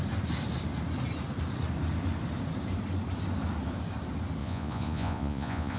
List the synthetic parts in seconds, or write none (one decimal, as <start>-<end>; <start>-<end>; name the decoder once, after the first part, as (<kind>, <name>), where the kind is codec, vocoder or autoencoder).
4.4-5.8 (vocoder, Vocos)